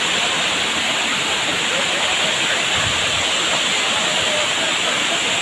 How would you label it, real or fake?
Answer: real